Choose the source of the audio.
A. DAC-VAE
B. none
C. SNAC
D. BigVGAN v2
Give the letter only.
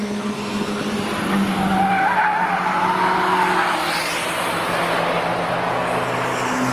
B